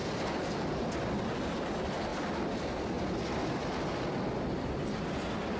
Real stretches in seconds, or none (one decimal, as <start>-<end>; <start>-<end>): 0.0-5.6